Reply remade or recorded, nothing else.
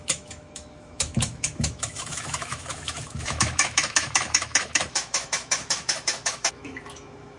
remade